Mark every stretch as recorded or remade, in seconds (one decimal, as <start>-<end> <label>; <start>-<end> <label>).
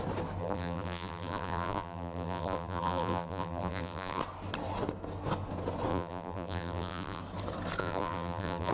0.0-0.4 recorded; 0.4-4.2 remade; 4.2-5.9 recorded; 5.9-7.2 remade; 7.2-7.8 recorded; 7.8-8.7 remade